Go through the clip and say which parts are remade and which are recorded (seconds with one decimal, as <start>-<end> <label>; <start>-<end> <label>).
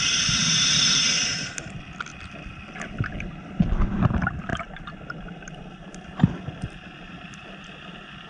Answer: 0.0-0.4 recorded; 0.4-1.0 remade; 1.0-2.1 recorded; 2.1-3.7 remade; 3.7-8.3 recorded